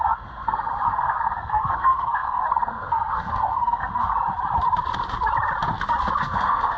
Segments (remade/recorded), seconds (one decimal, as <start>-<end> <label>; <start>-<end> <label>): 0.0-4.1 remade; 4.1-6.2 recorded; 6.2-6.8 remade